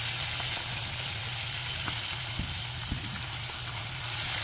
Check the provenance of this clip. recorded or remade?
recorded